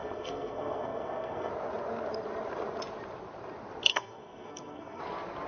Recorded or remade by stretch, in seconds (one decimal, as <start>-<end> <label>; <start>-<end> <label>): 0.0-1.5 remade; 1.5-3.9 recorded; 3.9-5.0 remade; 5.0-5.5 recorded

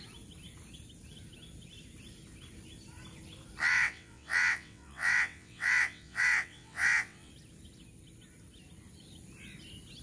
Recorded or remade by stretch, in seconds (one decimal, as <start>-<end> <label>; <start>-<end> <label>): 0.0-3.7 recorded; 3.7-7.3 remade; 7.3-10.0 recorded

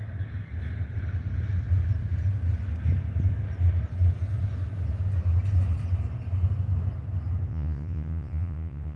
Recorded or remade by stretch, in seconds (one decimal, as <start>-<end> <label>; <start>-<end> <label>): 0.0-7.5 recorded; 7.5-9.0 remade

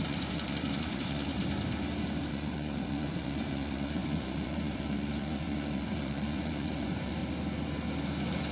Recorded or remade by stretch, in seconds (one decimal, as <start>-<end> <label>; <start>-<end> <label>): 0.0-1.3 remade; 1.3-2.3 recorded; 2.3-7.2 remade; 7.2-8.5 recorded

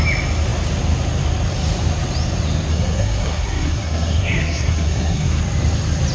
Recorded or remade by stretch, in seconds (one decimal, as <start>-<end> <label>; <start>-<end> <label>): 0.0-2.7 recorded; 2.7-5.4 remade; 5.4-6.1 recorded

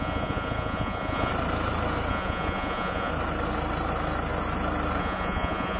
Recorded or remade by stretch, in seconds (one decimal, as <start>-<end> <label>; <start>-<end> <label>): 0.0-1.3 remade; 1.3-2.1 recorded; 2.1-3.1 remade; 3.1-5.0 recorded; 5.0-5.8 remade